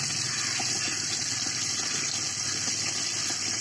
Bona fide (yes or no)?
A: yes